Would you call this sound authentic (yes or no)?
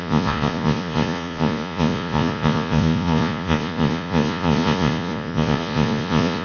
no